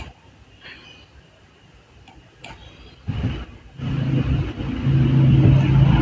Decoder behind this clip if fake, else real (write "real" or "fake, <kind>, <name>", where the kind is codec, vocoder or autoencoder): real